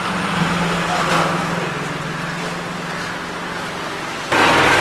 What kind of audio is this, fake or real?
real